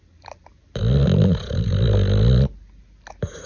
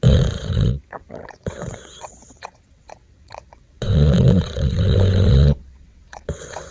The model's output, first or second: second